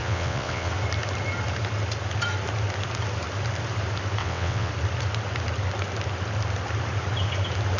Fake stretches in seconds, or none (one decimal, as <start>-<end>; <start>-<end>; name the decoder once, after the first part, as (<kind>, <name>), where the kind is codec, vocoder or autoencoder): 0.0-0.7 (vocoder, WaveNeXt); 4.2-4.7